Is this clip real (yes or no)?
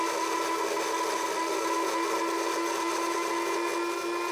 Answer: yes